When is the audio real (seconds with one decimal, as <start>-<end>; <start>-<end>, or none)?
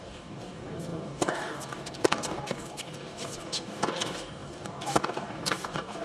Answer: none